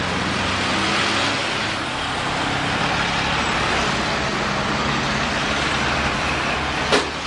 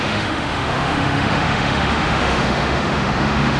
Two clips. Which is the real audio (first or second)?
first